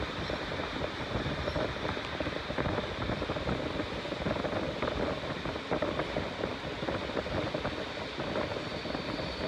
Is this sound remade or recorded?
recorded